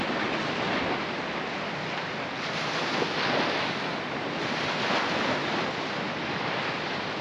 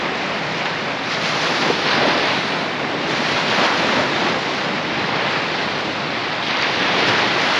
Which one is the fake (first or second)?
second